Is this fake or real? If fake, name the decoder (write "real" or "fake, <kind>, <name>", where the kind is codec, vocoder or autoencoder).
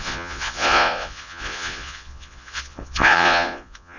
fake, vocoder, Vocos